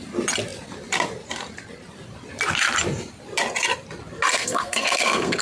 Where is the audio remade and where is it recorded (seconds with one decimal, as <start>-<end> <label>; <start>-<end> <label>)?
0.0-4.3 recorded; 4.3-5.4 remade